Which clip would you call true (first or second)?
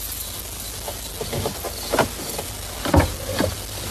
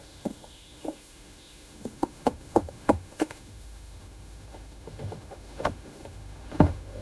first